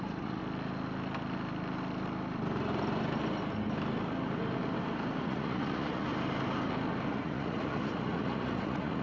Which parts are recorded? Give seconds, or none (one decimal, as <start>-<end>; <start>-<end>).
0.4-5.2; 6.1-7.1